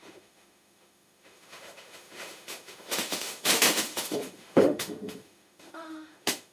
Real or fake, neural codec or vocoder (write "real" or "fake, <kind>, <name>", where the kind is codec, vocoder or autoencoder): fake, autoencoder, DAC-VAE